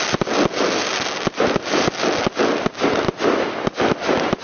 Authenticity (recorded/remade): recorded